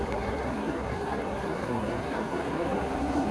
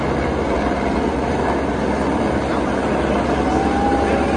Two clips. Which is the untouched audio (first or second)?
second